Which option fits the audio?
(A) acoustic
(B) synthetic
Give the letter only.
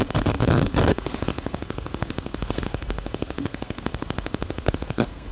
B